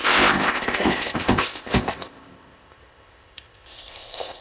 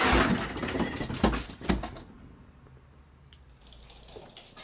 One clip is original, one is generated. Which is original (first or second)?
second